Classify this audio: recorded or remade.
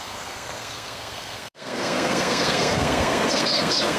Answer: remade